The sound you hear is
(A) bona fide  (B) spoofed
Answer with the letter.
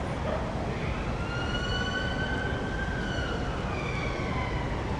A